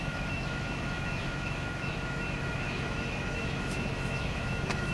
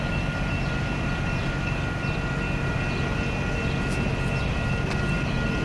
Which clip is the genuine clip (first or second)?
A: second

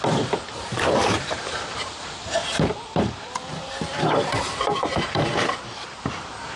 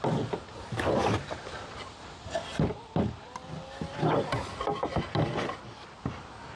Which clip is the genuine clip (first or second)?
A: second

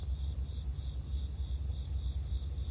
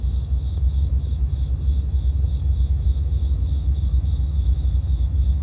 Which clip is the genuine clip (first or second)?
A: first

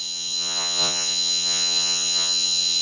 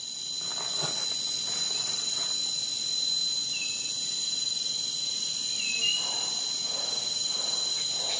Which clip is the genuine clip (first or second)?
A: second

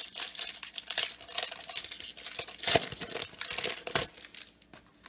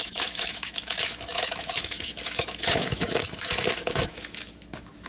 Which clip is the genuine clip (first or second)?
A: first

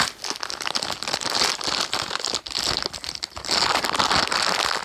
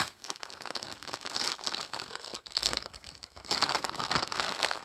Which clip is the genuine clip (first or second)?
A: first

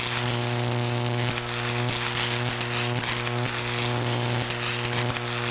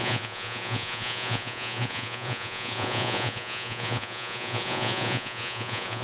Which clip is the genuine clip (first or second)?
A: first